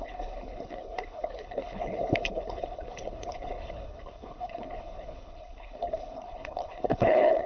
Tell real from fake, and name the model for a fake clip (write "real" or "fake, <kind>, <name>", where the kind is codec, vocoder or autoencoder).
fake, codec, HILCodec